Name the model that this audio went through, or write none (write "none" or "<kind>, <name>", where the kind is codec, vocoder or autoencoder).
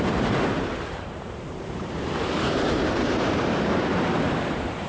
vocoder, BigVGAN v2